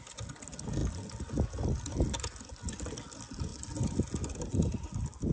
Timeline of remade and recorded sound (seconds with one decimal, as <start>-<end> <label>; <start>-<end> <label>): 0.0-5.3 recorded